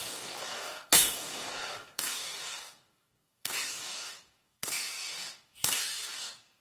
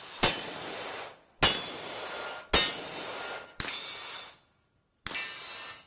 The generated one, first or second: first